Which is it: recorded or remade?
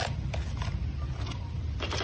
recorded